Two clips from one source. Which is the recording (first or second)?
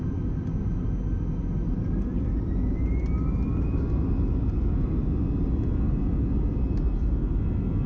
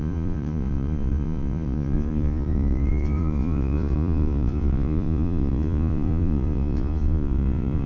first